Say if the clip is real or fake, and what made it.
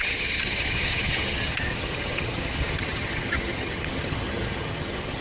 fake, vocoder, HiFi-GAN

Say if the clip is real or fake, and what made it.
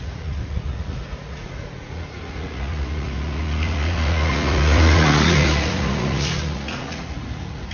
fake, vocoder, Vocos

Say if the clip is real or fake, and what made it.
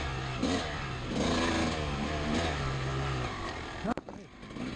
real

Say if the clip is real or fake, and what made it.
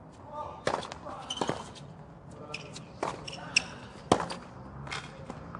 real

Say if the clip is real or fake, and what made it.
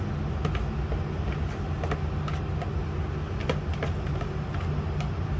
real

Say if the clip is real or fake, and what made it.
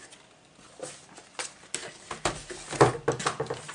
real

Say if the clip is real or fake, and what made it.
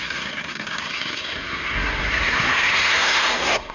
fake, codec, SNAC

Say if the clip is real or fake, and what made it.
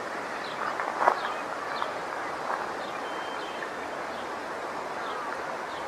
real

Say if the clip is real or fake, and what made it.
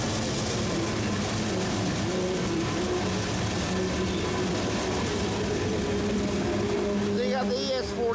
real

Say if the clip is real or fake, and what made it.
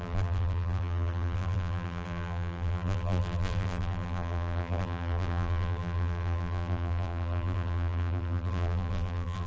fake, vocoder, BigVGAN v2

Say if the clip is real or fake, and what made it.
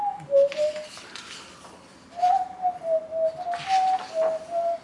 real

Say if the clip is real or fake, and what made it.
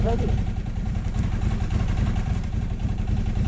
fake, vocoder, BigVGAN v2